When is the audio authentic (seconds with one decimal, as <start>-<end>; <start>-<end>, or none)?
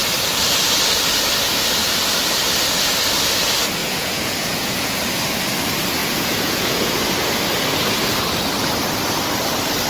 0.0-3.8; 4.9-6.0; 7.0-9.9